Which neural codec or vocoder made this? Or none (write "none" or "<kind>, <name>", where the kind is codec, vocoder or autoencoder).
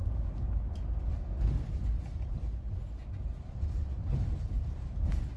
none